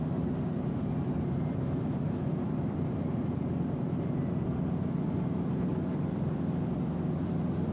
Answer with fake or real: real